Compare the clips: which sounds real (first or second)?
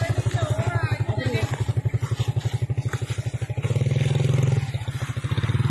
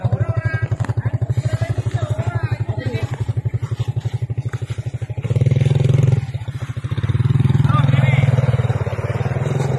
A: first